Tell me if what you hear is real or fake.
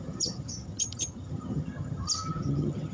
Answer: fake